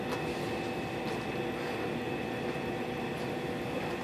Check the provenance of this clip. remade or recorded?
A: recorded